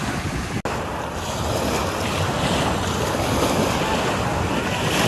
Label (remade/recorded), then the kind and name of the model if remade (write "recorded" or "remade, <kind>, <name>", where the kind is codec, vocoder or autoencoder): recorded